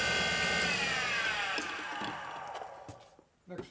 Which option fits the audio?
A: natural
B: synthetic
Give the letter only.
A